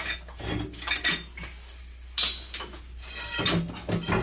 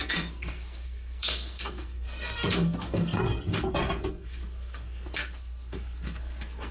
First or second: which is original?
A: first